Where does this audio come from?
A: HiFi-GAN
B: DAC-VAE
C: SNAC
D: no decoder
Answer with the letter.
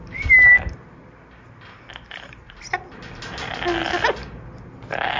D